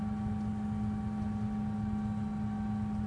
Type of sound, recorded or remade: recorded